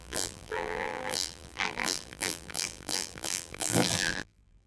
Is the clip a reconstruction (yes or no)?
yes